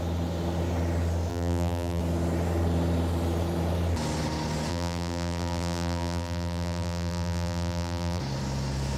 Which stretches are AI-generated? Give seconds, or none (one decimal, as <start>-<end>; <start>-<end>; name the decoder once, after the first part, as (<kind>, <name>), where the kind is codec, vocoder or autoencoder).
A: 1.3-2.0 (vocoder, BigVGAN v2); 4.7-8.2

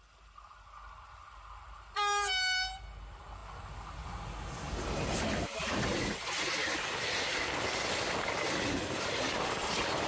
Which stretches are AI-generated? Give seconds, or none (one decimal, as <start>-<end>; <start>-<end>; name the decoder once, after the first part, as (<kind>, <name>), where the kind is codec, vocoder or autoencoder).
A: none

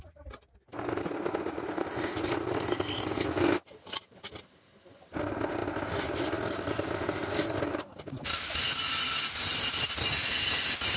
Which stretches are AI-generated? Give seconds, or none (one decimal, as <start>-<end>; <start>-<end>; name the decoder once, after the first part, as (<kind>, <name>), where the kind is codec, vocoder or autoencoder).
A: none

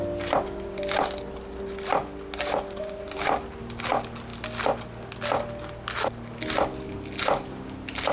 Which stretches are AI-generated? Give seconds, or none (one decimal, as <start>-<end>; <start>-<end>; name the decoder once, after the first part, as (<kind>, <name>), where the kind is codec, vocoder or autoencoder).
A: none

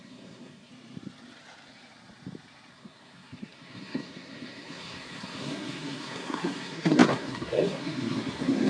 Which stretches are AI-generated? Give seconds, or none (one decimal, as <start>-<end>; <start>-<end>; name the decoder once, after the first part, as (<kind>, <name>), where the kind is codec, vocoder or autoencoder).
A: 0.0-0.7 (codec, SNAC); 2.7-8.7